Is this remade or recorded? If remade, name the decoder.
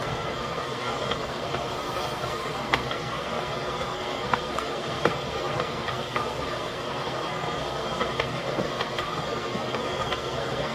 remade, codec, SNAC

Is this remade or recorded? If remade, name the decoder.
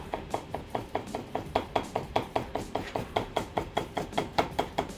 remade, vocoder, BigVGAN v2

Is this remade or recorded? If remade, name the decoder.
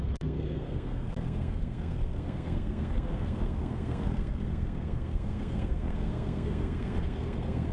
remade, codec, SNAC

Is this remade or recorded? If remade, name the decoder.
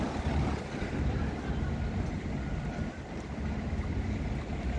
recorded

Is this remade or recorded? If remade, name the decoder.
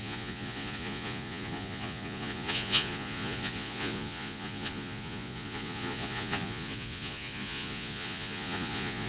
remade, vocoder, Vocos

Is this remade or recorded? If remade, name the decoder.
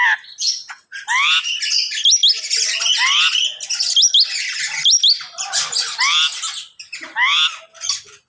recorded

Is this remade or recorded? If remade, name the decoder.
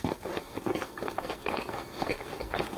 remade, codec, SNAC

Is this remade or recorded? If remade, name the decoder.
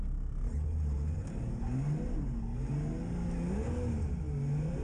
recorded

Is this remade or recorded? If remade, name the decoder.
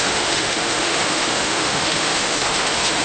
remade, autoencoder, DAC-VAE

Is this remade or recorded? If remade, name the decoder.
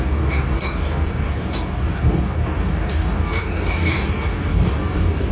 remade, codec, DAC